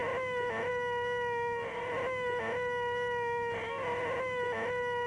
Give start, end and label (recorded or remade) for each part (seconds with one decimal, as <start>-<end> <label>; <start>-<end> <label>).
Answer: 0.0-5.1 recorded